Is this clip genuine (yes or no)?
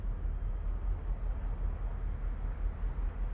yes